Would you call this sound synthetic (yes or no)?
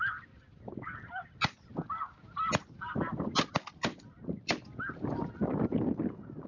no